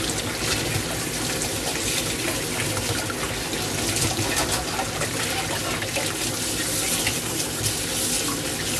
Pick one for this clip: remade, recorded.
recorded